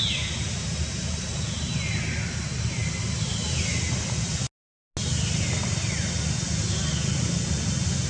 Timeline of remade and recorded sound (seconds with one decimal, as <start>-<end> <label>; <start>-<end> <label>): 0.0-8.1 recorded